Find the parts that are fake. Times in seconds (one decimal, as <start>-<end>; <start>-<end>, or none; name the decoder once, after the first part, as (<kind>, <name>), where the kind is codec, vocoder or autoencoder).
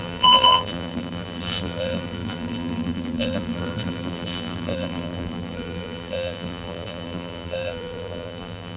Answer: 0.0-8.8 (vocoder, BigVGAN v2)